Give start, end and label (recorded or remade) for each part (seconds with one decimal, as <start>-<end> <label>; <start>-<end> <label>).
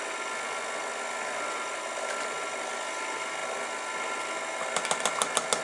0.0-5.6 recorded